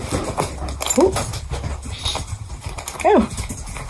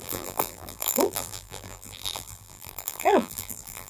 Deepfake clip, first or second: second